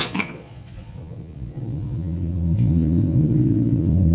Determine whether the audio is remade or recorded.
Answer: remade